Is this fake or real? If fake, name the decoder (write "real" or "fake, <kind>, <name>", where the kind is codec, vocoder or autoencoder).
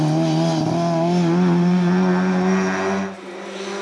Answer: real